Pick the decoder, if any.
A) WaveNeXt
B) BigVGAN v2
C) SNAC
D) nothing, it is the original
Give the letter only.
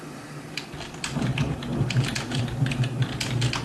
B